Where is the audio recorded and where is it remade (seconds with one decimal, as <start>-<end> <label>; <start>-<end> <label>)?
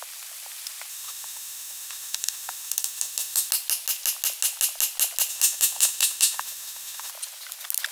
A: 0.0-0.9 recorded; 0.9-3.5 remade; 3.5-5.3 recorded; 5.3-7.1 remade; 7.1-7.9 recorded